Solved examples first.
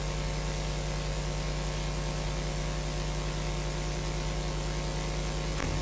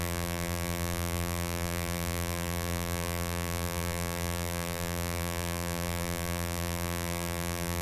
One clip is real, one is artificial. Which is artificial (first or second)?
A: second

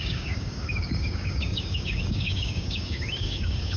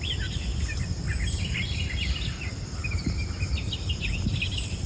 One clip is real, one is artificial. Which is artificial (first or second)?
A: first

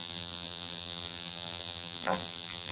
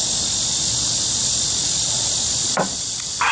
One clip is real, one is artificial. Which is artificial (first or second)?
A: first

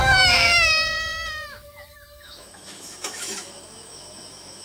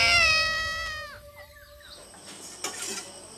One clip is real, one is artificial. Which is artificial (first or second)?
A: first